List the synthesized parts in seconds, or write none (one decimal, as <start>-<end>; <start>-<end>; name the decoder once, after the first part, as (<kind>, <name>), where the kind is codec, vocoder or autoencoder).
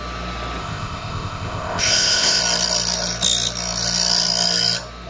0.6-2.4 (codec, ZipCodec)